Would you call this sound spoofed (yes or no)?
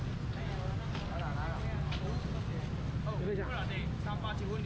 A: no